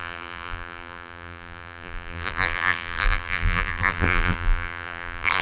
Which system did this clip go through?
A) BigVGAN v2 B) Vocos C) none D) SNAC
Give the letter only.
A